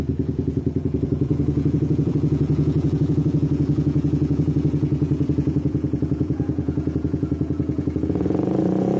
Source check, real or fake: fake